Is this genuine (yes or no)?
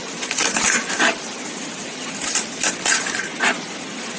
yes